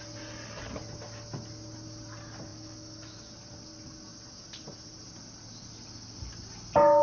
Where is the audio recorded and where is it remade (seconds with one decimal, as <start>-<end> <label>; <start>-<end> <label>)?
0.0-2.5 recorded; 2.5-3.3 remade; 3.3-7.0 recorded